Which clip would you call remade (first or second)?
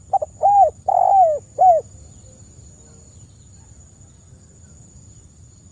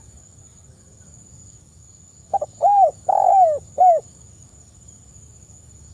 second